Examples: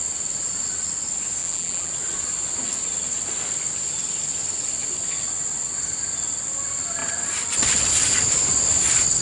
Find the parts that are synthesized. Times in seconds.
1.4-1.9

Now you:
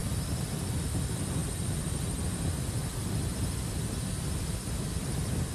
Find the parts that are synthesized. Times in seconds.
none

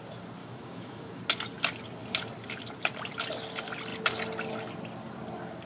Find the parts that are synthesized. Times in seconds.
0.4-1.2